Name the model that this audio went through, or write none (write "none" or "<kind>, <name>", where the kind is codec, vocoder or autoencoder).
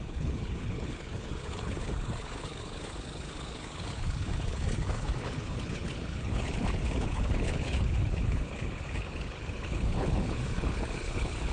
codec, HILCodec